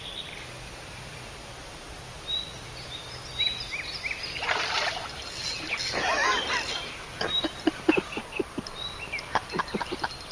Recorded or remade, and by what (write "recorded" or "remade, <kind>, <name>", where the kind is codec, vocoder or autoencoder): recorded